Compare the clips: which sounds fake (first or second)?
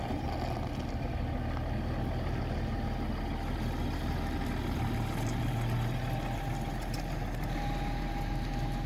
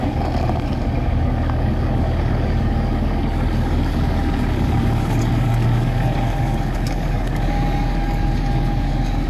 second